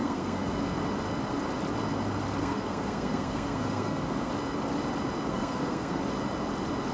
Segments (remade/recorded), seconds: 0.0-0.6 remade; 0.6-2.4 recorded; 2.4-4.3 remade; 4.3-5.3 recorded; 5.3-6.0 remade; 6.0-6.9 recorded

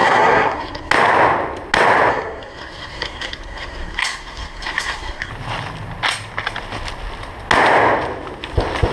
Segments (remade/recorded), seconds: 0.0-0.9 remade; 0.9-2.1 recorded; 2.1-5.3 remade; 5.3-8.9 recorded

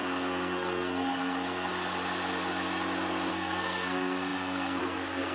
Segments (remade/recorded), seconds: 0.0-1.7 remade; 1.7-3.3 recorded; 3.3-5.3 remade